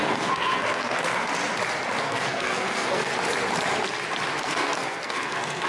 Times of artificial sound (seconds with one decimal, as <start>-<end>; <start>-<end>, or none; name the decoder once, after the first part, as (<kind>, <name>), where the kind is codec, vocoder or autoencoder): 0.0-1.3 (codec, SNAC); 2.0-3.1; 4.4-5.7